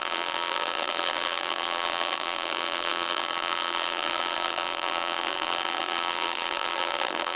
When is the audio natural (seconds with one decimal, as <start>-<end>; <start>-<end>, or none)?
none